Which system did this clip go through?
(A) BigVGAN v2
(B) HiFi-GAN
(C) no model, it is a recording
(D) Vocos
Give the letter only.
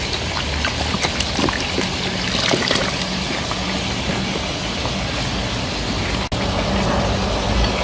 C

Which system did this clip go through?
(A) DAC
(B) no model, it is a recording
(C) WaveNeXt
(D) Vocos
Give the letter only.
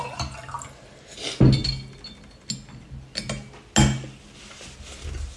B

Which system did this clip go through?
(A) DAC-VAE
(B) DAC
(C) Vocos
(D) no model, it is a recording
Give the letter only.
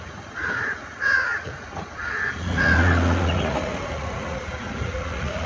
C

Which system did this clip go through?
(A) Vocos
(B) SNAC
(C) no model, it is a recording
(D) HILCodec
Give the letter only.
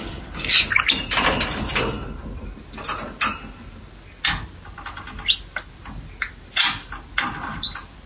C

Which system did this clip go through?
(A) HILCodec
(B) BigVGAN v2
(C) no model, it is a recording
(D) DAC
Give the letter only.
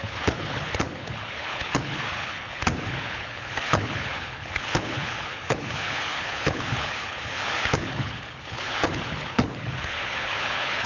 A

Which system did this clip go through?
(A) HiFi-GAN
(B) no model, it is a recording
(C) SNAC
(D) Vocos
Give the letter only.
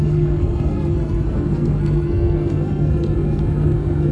C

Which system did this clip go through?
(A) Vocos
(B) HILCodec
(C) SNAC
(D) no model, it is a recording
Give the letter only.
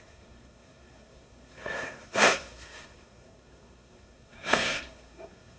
C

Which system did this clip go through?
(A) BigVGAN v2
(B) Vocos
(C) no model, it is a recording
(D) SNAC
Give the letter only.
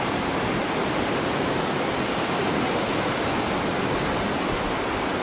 C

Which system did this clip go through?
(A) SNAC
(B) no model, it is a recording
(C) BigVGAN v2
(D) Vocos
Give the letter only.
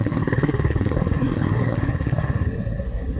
A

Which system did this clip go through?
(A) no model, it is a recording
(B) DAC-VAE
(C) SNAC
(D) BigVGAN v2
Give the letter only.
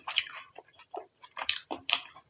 D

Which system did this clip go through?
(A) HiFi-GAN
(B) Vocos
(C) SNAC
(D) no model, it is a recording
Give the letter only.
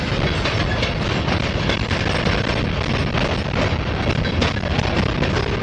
D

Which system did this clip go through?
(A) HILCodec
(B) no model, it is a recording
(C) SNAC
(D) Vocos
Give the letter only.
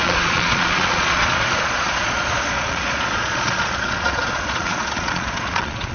D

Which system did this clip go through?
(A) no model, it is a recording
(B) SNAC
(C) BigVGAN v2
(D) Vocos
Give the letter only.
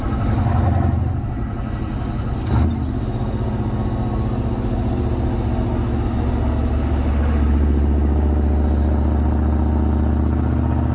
A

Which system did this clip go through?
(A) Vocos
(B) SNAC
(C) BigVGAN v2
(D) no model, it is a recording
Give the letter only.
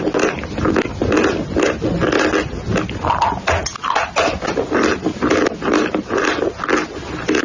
D